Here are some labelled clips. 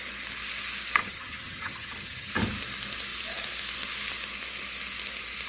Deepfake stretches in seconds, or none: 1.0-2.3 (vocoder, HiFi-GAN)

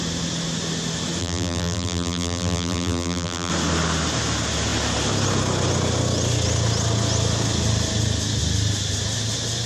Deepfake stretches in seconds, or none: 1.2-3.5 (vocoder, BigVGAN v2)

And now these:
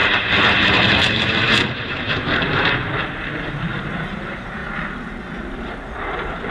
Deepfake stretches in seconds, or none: 0.0-4.6 (vocoder, BigVGAN v2); 5.8-6.5

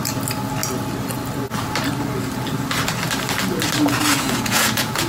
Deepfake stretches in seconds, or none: 4.1-5.1 (vocoder, Vocos)

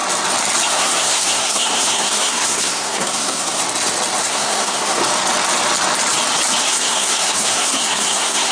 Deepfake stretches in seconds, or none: 0.7-3.6 (codec, SNAC); 4.2-5.0; 6.6-8.5

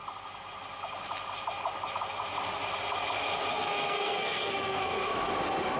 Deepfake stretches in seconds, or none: 3.5-5.1 (codec, SNAC)